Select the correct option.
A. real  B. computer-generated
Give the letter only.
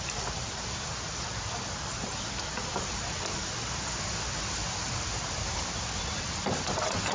A